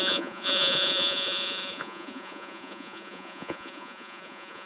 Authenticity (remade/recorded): remade